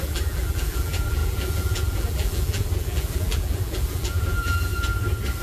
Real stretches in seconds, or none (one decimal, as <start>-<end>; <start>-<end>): 4.7-5.4